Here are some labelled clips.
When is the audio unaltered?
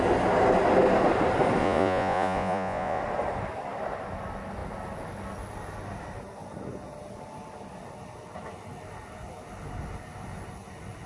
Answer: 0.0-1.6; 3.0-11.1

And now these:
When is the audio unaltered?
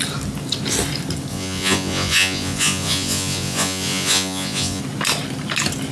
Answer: 0.0-1.3; 4.8-5.9